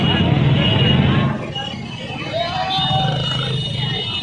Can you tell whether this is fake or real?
real